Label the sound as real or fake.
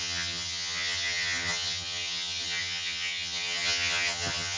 fake